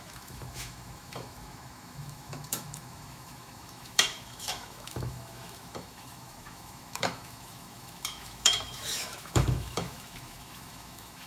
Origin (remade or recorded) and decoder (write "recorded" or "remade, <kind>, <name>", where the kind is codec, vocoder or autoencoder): remade, autoencoder, DAC-VAE